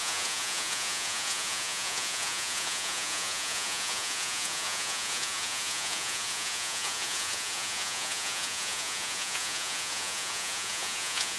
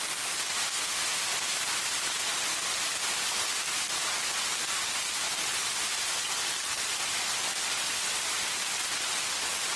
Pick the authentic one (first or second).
second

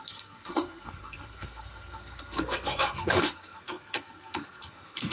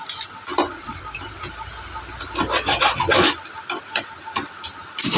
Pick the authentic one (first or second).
second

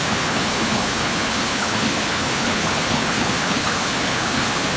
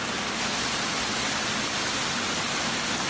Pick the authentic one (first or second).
second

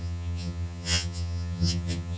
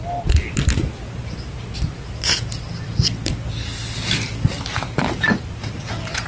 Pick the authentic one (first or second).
second